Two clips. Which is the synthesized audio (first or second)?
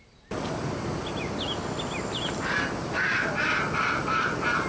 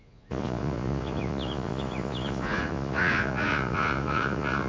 second